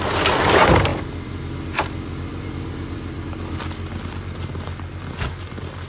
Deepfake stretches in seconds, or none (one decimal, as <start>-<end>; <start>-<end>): 0.9-1.5; 2.3-3.5

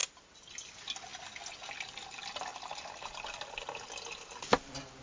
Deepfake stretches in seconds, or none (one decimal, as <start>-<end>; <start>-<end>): none

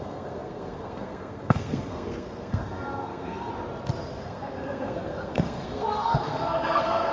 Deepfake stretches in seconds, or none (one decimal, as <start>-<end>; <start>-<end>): 0.0-3.5; 4.2-7.1

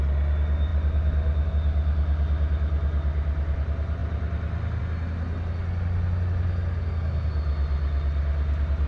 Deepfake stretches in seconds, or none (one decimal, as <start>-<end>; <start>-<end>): none

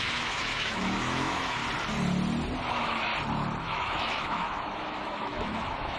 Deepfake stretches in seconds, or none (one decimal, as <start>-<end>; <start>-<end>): 0.0-1.6; 2.7-3.1; 3.6-6.0

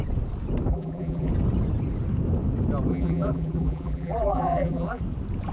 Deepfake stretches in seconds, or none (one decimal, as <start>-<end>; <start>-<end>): 0.7-1.3; 2.9-5.0